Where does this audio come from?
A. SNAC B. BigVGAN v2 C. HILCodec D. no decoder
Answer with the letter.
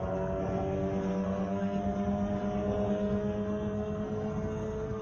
A